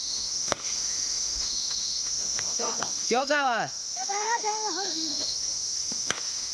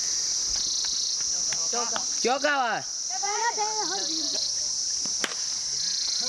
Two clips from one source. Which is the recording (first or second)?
second